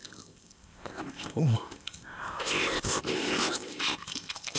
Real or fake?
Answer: fake